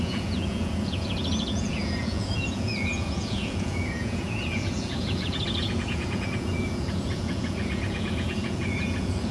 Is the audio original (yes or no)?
no